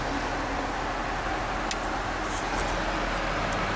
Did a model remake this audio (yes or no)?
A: no